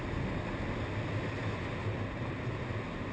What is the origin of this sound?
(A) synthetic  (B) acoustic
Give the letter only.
B